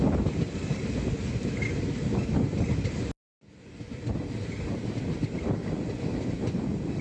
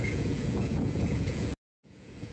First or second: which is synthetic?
second